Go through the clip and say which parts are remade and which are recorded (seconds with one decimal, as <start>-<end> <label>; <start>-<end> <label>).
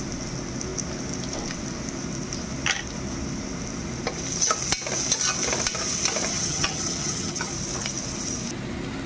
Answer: 0.0-6.3 recorded; 6.3-7.5 remade; 7.5-9.1 recorded